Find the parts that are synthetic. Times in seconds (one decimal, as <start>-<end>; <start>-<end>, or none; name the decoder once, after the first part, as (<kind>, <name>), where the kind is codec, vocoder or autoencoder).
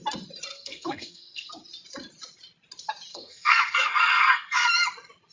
0.5-1.5 (codec, SNAC); 3.1-4.7